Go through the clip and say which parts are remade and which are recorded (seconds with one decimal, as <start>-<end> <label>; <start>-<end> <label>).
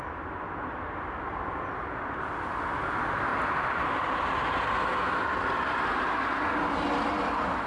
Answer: 0.0-3.3 recorded; 3.3-4.3 remade; 4.3-7.7 recorded